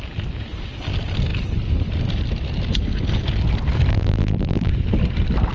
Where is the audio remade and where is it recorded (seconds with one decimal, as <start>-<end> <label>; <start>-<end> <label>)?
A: 0.0-3.9 recorded; 3.9-4.7 remade; 4.7-5.5 recorded